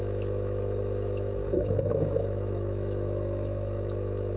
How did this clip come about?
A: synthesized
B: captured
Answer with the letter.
A